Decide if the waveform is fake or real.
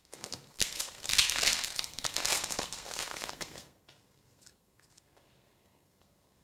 fake